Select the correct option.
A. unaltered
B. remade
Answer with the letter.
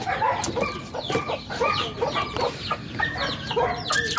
A